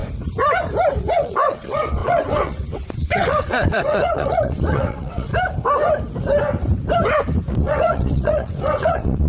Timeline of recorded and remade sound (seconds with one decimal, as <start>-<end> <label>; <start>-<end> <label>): 0.0-1.0 recorded; 1.0-5.3 remade; 5.3-7.5 recorded; 7.5-9.3 remade